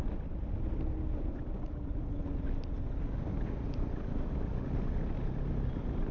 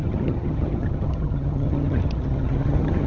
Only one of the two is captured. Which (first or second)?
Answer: first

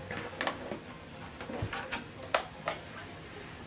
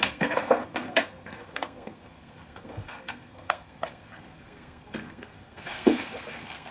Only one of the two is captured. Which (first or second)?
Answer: first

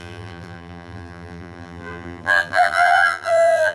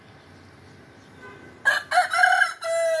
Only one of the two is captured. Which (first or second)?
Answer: second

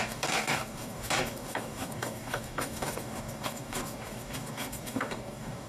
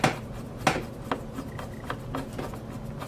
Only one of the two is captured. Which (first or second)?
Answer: second